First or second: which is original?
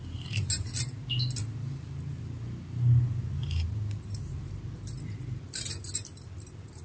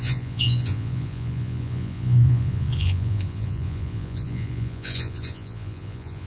first